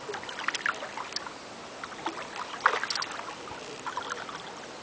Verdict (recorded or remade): recorded